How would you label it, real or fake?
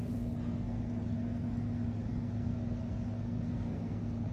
fake